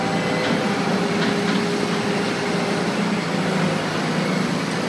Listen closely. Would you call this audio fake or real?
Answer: real